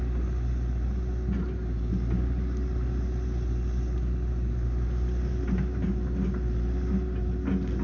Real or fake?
real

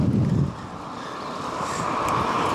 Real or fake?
real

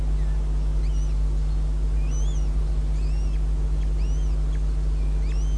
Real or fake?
real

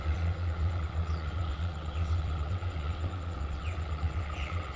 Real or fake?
fake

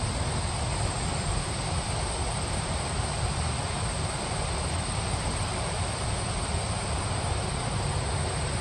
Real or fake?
real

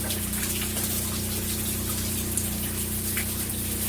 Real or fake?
real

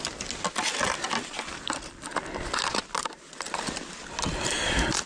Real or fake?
real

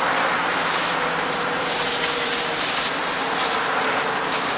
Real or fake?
fake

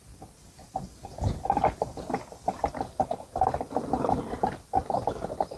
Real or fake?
real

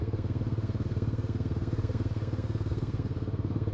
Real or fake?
fake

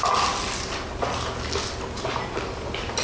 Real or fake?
real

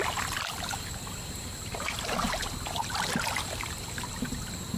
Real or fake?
real